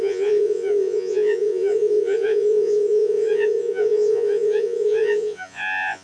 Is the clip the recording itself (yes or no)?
no